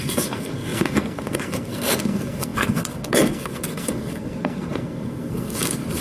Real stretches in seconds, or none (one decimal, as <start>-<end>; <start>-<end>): none